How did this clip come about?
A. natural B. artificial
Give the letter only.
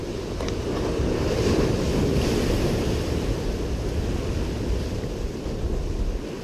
A